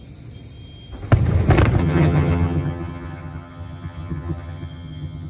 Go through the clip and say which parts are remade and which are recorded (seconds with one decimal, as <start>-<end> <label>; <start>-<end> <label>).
0.0-1.8 recorded; 1.8-5.3 remade